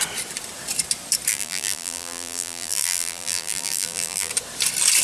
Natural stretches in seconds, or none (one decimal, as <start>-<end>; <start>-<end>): 0.0-1.3; 4.3-5.0